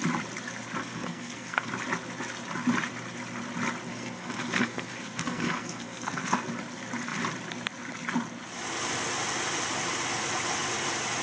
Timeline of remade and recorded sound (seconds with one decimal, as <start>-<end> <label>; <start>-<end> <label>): 0.0-0.8 recorded; 0.8-1.7 remade; 1.7-3.9 recorded; 3.9-6.5 remade; 6.5-11.2 recorded